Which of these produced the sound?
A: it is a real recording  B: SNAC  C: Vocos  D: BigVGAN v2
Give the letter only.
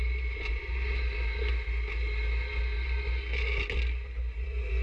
A